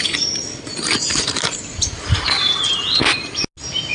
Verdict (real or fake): real